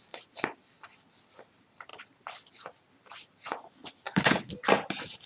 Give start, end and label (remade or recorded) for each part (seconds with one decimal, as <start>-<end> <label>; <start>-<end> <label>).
0.0-5.3 recorded